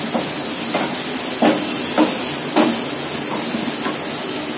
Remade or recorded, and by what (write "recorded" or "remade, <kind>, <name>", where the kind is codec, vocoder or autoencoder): recorded